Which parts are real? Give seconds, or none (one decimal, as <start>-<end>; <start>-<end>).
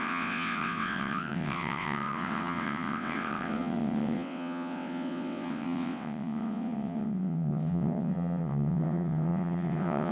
none